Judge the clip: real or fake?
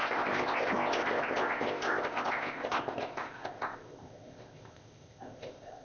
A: fake